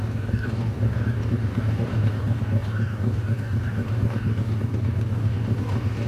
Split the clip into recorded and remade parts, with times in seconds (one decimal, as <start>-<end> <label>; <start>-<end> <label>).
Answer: 0.0-6.1 remade